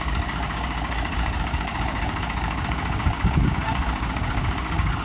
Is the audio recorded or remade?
remade